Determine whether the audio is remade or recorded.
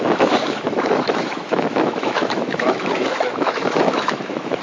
remade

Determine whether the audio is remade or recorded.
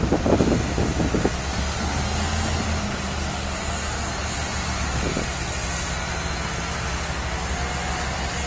recorded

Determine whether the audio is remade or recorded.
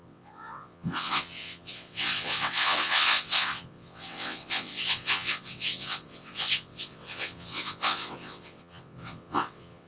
remade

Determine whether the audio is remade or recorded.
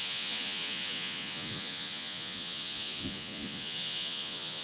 remade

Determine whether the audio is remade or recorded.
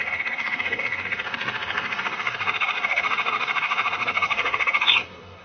remade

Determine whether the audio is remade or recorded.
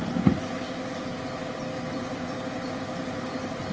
recorded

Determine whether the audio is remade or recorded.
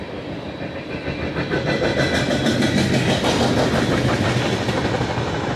recorded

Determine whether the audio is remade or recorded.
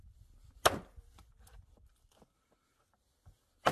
recorded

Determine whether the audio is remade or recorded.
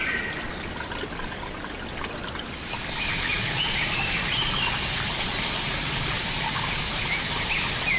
recorded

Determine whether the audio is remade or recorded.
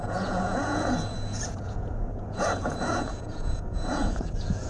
remade